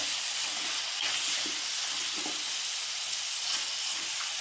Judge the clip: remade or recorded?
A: recorded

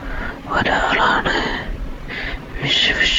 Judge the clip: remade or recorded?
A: remade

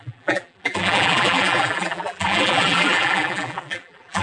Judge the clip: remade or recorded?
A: remade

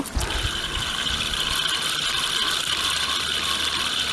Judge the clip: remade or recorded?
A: recorded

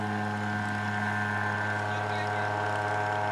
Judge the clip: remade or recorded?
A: recorded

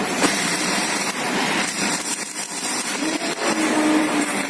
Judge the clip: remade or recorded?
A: remade